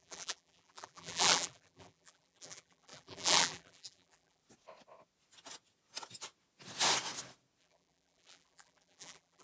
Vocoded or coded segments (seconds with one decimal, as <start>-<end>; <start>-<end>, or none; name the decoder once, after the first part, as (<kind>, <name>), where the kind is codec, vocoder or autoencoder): 0.0-4.4 (vocoder, BigVGAN v2); 7.6-9.4

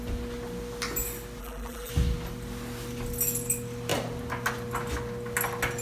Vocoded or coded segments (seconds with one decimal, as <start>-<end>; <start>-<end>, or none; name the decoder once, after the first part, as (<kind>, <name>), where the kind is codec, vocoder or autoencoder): 1.4-1.9 (vocoder, BigVGAN v2)

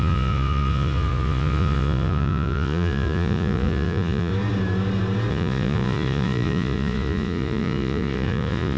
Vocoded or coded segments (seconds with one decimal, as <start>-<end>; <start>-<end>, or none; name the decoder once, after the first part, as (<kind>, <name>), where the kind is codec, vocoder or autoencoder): 0.0-4.3 (vocoder, Vocos); 5.3-8.8

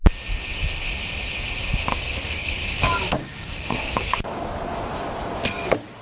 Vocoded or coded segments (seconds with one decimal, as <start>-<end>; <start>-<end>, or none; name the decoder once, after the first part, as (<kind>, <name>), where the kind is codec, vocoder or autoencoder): 1.9-4.6 (codec, DAC)

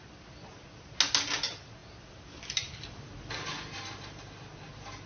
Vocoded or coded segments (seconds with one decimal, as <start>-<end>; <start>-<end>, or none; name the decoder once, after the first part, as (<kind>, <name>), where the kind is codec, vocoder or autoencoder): none

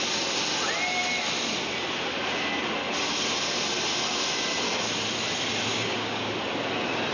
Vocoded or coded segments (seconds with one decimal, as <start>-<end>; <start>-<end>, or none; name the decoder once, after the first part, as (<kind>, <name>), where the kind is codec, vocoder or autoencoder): 5.7-6.3 (codec, DAC)

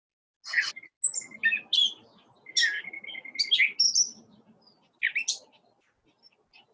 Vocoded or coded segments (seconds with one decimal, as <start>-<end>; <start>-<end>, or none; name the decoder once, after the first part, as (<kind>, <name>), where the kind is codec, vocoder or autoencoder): none

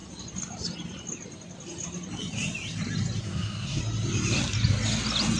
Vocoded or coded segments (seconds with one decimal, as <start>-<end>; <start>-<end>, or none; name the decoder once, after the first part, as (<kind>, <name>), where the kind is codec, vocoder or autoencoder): 3.2-3.8 (codec, SNAC)